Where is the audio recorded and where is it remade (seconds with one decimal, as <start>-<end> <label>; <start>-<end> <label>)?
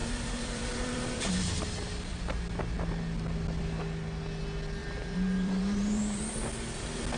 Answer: 0.0-1.6 remade; 1.6-4.8 recorded; 4.8-6.3 remade; 6.3-7.2 recorded